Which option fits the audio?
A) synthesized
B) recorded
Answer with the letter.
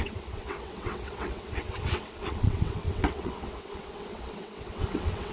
A